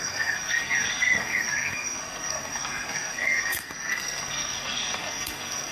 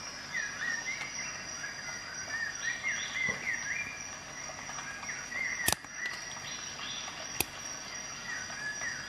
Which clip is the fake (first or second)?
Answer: first